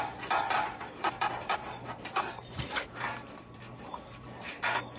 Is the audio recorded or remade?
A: remade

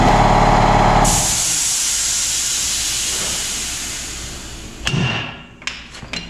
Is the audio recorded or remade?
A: recorded